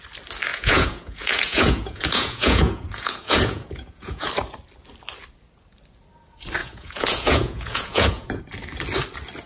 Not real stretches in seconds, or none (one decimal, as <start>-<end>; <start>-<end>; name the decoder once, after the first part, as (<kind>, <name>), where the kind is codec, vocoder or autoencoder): 0.5-4.3 (vocoder, Vocos); 6.6-8.4